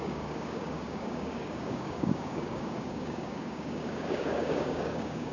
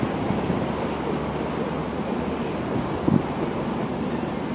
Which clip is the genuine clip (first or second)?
second